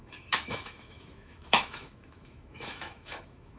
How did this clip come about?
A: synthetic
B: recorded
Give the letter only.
A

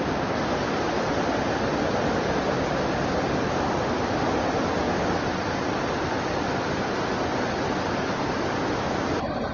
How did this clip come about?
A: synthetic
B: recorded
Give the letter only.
B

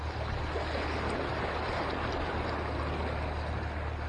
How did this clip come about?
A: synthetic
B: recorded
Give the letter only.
B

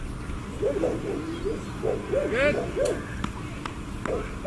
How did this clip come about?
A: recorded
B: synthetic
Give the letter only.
A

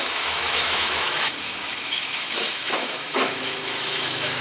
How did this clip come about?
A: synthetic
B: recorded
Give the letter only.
A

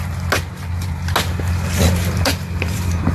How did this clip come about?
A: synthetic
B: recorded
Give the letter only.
B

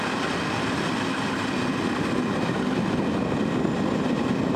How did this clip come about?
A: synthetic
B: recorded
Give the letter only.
B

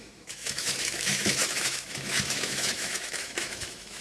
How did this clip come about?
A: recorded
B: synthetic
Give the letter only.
B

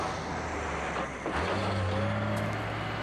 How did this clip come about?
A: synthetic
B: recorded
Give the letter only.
B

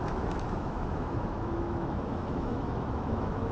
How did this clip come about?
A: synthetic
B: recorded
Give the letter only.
A